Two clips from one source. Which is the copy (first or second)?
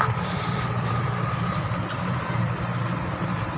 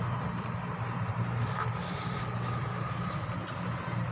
first